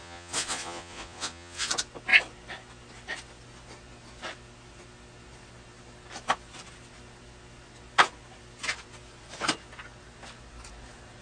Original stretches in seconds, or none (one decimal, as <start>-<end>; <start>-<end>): 1.7-11.2